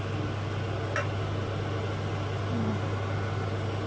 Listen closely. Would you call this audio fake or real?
real